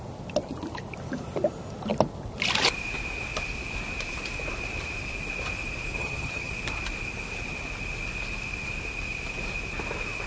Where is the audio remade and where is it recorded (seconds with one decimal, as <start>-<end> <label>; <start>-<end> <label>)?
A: 0.0-6.0 recorded; 6.0-6.5 remade; 6.5-10.3 recorded